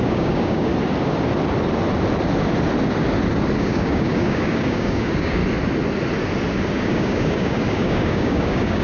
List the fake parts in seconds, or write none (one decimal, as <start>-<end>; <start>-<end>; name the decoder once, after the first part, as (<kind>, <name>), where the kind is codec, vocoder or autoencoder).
0.0-0.7 (codec, DAC); 3.6-5.4; 6.7-8.8